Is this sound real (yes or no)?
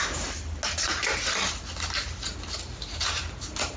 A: yes